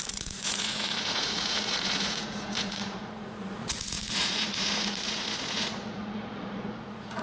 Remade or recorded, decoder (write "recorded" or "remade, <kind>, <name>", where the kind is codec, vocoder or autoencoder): remade, vocoder, Vocos